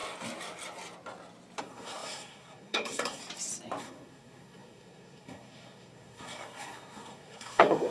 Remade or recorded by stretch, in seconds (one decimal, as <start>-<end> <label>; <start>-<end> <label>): 0.0-1.6 recorded; 1.6-3.2 remade; 3.2-3.8 recorded; 3.8-7.9 remade